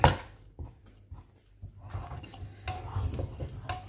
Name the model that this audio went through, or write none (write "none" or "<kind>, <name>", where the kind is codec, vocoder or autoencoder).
none